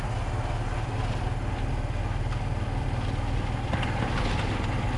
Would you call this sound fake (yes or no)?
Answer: no